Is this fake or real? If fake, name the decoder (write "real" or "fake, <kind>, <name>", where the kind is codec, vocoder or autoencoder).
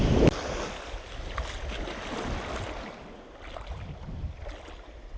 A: real